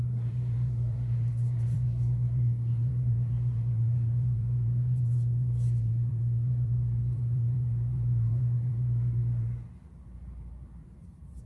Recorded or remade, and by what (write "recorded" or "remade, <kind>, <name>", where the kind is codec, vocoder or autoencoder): remade, vocoder, BigVGAN v2